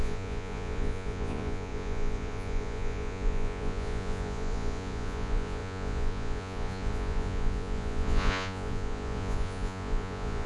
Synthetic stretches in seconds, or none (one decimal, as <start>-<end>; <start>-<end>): 0.0-10.5